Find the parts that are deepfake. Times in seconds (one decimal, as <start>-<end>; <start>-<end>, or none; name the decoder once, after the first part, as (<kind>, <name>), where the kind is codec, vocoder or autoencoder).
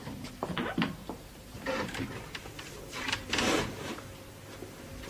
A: 1.0-4.1 (vocoder, BigVGAN v2)